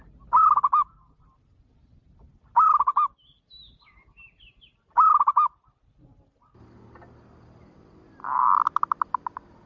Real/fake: real